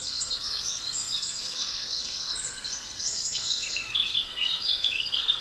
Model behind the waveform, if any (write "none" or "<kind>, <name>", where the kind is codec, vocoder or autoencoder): codec, SNAC